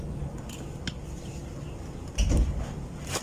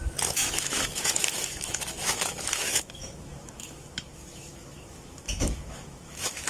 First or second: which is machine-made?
second